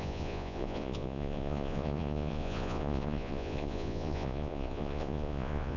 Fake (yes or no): yes